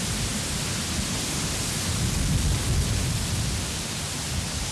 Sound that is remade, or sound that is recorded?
recorded